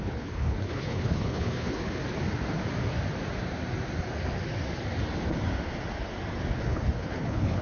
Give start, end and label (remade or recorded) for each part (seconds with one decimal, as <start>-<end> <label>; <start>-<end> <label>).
0.0-2.0 remade; 2.0-6.6 recorded; 6.6-7.6 remade